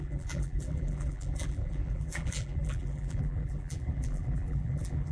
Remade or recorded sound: remade